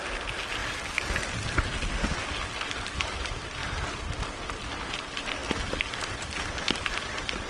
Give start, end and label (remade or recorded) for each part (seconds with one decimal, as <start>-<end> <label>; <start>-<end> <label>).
0.0-7.5 recorded